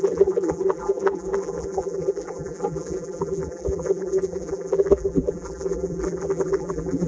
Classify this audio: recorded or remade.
remade